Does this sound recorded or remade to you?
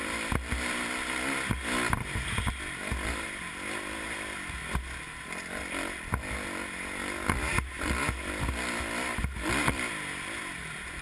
recorded